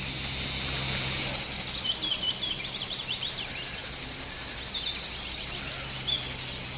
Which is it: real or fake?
real